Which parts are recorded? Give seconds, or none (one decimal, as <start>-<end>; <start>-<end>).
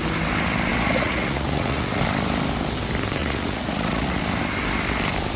0.0-0.7; 2.0-3.2; 4.2-5.4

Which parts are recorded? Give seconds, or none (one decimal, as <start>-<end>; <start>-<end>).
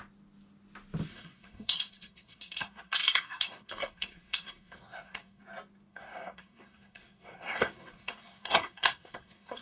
0.0-1.1; 5.4-5.9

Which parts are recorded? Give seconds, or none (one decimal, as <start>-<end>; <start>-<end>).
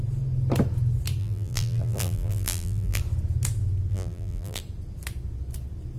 0.0-1.2; 3.0-3.9; 4.6-6.0